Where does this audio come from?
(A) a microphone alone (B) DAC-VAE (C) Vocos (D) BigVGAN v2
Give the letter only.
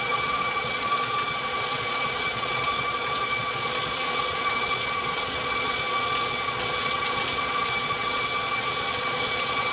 C